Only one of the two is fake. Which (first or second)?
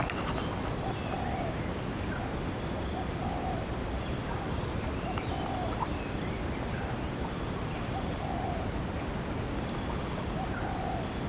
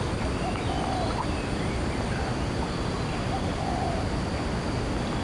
first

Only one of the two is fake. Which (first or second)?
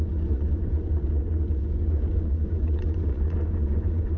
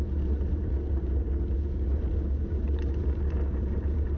first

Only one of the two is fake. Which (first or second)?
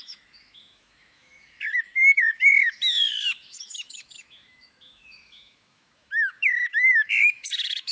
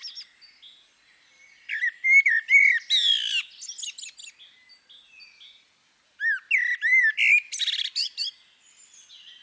first